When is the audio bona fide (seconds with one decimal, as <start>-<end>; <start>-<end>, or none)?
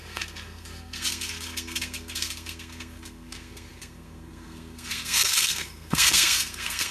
none